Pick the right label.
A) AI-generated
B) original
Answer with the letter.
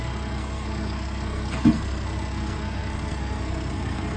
A